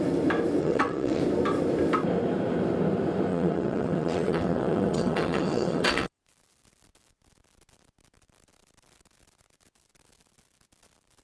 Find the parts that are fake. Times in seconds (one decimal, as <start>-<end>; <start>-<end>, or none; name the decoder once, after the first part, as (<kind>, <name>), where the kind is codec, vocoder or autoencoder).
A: 0.6-1.2 (vocoder, WaveNeXt); 3.3-6.2